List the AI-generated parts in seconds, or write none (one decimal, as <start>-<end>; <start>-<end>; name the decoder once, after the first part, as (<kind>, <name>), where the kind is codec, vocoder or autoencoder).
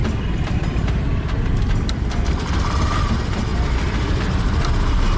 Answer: 0.0-3.1 (vocoder, BigVGAN v2)